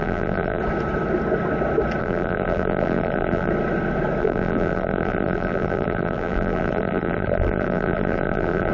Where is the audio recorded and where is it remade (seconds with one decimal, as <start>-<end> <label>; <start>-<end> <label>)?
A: 0.0-0.6 remade; 0.6-2.0 recorded; 2.0-3.5 remade; 3.5-4.2 recorded; 4.2-8.7 remade